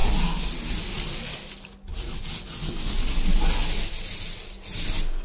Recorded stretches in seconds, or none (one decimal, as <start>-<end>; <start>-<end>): 0.0-5.2